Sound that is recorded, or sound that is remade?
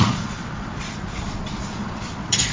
remade